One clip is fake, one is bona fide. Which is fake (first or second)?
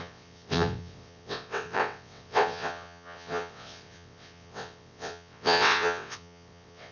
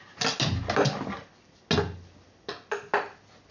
first